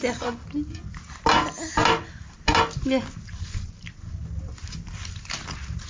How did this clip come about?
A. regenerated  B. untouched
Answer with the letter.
B